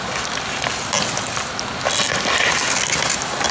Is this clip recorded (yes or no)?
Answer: yes